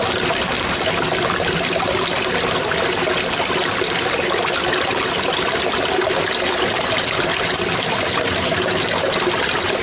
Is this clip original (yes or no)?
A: yes